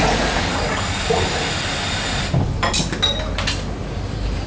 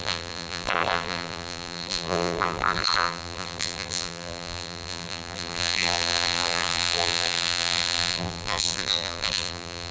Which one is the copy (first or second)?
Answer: second